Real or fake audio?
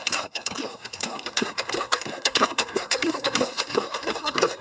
fake